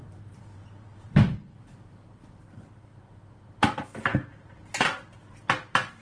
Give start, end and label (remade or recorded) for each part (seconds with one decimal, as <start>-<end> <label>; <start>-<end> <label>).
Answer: 0.0-2.4 remade; 2.4-4.1 recorded; 4.1-4.7 remade; 4.7-6.0 recorded

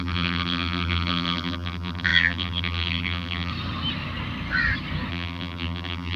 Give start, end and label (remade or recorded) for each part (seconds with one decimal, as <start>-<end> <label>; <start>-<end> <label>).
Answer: 0.0-3.5 remade; 3.5-5.1 recorded; 5.1-6.2 remade

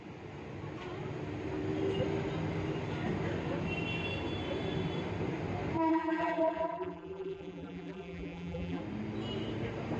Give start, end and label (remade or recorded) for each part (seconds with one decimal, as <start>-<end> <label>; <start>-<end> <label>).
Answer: 0.0-5.9 recorded; 5.9-8.8 remade; 8.8-10.0 recorded

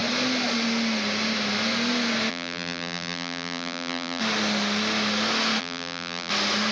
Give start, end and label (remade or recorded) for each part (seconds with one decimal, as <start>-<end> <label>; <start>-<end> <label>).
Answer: 0.0-2.3 recorded; 2.3-4.2 remade; 4.2-5.6 recorded; 5.6-6.3 remade; 6.3-6.7 recorded

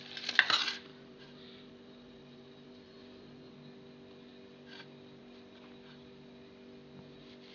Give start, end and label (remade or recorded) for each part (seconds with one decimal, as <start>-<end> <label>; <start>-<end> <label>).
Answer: 0.0-0.9 recorded; 0.9-3.5 remade; 3.5-7.5 recorded

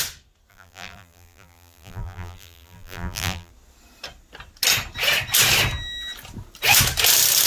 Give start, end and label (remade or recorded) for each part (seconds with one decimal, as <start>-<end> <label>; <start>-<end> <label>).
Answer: 0.0-0.5 recorded; 0.5-3.5 remade; 3.5-7.5 recorded